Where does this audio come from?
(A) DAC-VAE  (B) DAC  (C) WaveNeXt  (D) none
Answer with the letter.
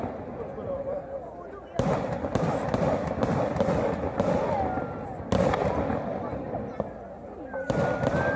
D